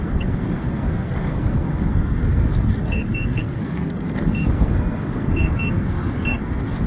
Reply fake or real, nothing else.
fake